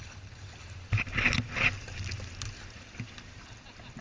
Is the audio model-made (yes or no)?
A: no